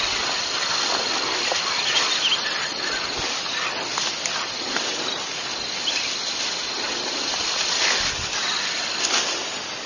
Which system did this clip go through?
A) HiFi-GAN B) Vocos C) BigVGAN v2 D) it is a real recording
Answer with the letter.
D